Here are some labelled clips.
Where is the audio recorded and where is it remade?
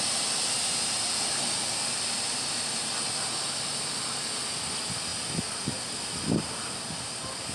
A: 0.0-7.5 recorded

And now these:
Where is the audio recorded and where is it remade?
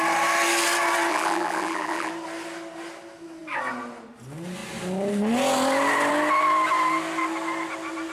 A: 0.0-1.1 recorded; 1.1-2.1 remade; 2.1-8.1 recorded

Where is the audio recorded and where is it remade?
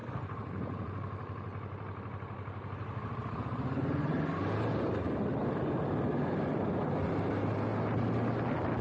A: 0.0-4.1 remade; 4.1-5.4 recorded; 5.4-6.1 remade; 6.1-8.8 recorded